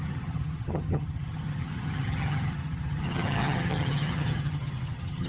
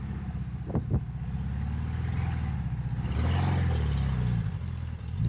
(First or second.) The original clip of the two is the second